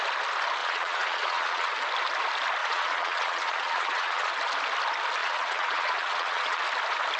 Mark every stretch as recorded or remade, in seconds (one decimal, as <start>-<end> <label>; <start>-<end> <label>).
0.0-0.6 recorded; 0.6-1.7 remade; 1.7-2.6 recorded; 2.6-4.3 remade; 4.3-5.2 recorded; 5.2-6.6 remade; 6.6-7.2 recorded